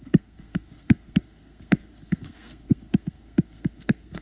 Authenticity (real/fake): fake